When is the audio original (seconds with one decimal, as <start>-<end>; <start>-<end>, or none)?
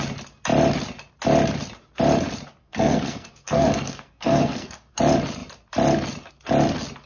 0.0-2.6; 5.0-7.1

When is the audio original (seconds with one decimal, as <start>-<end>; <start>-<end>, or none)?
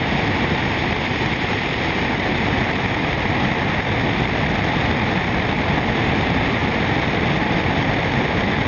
0.0-8.7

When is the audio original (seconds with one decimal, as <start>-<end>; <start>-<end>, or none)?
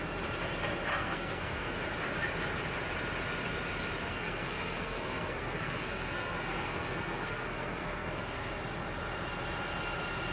0.0-0.9; 1.7-4.1; 8.5-10.3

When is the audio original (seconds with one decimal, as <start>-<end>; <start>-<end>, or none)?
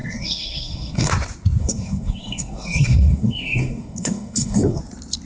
1.1-1.6; 4.8-5.3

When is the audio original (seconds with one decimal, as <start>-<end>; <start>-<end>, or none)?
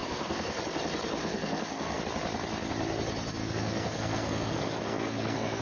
0.6-1.2; 2.0-3.4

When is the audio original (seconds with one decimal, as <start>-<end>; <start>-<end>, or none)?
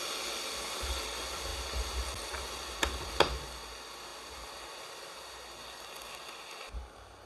0.0-7.3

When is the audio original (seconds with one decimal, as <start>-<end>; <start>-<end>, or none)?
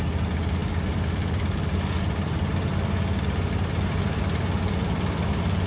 0.0-5.7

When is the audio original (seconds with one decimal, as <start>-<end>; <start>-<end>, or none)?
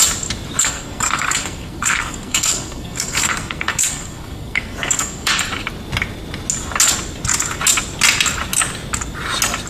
0.0-0.6; 5.4-9.7